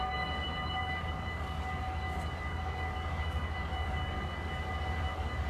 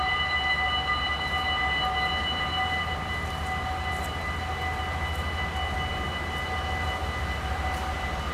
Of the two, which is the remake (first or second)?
first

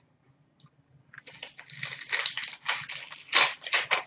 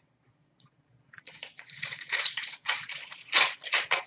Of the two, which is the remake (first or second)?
second